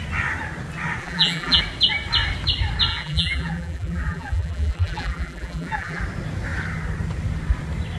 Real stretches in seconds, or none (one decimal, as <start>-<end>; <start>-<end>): 0.0-1.0; 1.6-2.9; 6.0-8.0